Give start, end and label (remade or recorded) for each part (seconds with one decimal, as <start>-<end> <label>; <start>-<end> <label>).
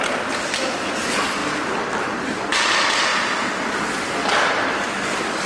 0.0-1.4 recorded; 1.4-2.5 remade; 2.5-5.5 recorded